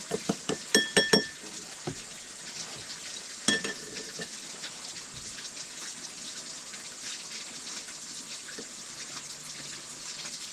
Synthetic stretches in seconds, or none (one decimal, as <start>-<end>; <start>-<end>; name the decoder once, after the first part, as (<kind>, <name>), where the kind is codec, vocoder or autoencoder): 2.1-3.4 (vocoder, BigVGAN v2)